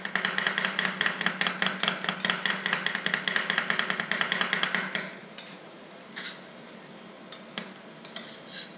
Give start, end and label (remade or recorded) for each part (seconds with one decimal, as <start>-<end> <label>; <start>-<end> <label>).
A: 0.0-5.2 recorded; 5.2-6.0 remade; 6.0-8.8 recorded